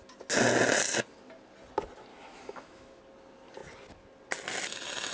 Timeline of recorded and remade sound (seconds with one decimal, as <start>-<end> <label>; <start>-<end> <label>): 0.0-2.1 recorded; 2.1-3.0 remade; 3.0-5.1 recorded